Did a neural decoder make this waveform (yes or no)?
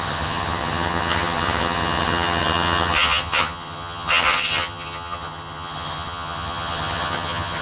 yes